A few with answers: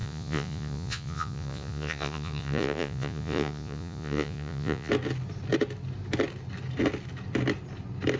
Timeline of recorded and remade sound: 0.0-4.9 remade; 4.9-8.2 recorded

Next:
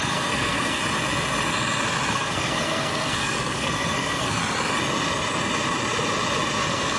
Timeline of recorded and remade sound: 0.0-0.8 remade; 0.8-2.1 recorded; 2.1-4.4 remade; 4.4-6.6 recorded; 6.6-7.0 remade

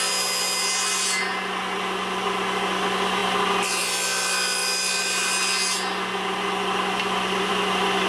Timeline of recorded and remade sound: 0.0-8.1 recorded